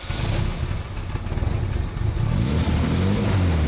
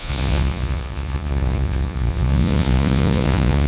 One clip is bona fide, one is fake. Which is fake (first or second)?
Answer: second